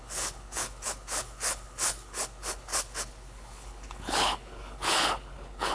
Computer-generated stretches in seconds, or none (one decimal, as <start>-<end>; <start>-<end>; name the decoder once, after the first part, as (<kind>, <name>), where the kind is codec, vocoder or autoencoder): 0.0-5.7 (codec, HILCodec)